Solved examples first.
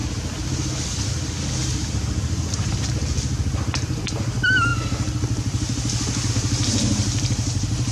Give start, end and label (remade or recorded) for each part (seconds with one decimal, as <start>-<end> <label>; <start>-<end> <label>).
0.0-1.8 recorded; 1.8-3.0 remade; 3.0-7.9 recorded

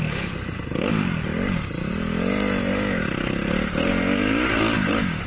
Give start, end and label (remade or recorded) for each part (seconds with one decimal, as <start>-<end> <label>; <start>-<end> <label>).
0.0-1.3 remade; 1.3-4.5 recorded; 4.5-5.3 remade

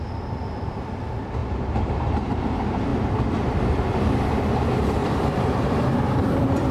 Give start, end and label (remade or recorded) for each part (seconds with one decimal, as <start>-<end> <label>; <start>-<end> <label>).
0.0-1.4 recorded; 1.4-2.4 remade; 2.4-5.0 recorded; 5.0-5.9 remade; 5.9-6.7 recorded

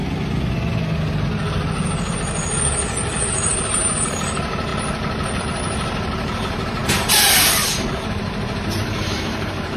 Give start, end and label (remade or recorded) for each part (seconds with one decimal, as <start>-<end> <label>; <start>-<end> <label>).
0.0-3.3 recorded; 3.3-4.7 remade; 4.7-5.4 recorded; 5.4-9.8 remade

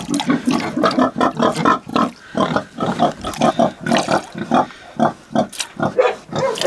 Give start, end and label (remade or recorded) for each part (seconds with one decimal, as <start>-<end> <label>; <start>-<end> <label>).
0.0-1.9 recorded; 1.9-3.5 remade; 3.5-6.7 recorded